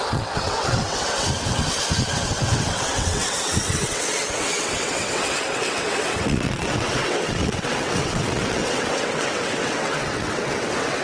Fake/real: fake